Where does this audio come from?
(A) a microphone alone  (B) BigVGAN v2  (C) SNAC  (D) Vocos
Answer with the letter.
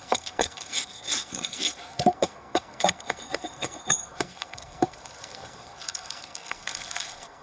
C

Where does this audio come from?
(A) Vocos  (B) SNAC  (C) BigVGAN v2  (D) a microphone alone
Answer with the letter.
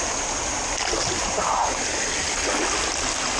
D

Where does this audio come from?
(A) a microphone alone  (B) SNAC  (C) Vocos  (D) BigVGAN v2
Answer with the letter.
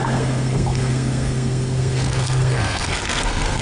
B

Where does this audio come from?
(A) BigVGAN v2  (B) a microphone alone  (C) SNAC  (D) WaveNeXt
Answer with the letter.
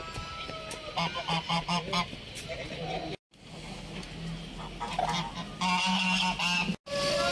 B